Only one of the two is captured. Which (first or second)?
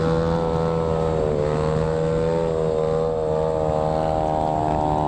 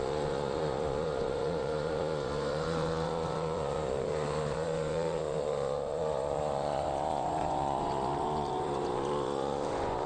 first